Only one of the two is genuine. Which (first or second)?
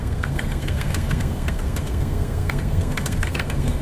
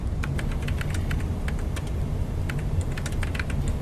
second